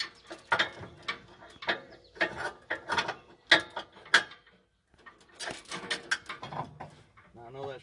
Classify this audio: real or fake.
real